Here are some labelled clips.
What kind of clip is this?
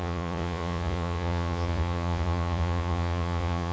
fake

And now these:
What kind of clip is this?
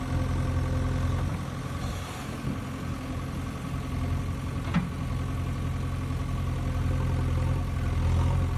real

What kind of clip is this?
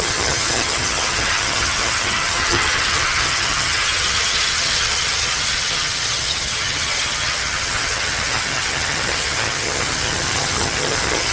fake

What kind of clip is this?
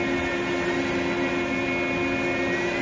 real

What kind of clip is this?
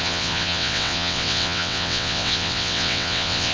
fake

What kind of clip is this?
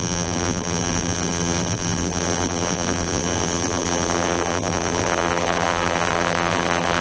fake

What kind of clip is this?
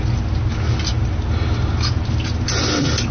real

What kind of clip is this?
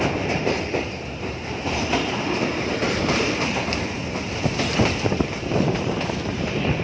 fake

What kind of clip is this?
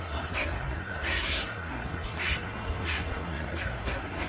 fake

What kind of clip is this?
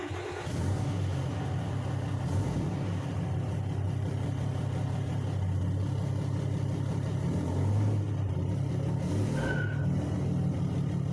real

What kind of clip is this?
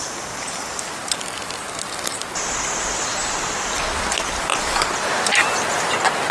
real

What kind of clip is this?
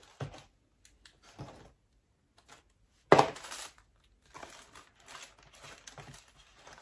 real